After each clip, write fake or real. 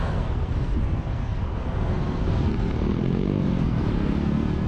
fake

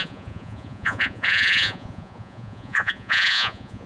fake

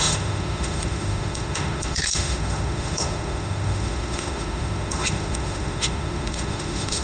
fake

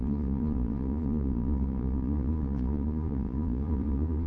fake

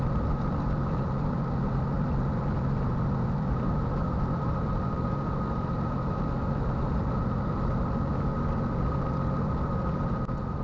real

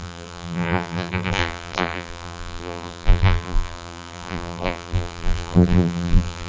fake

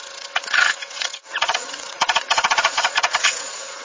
fake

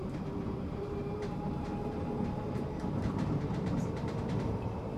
fake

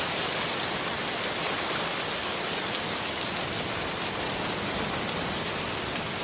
real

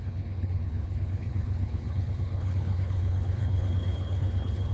fake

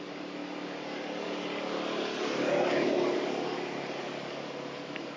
fake